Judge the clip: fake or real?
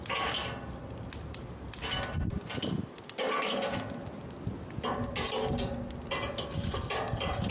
real